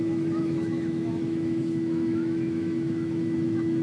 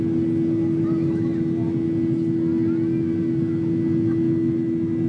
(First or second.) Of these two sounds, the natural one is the second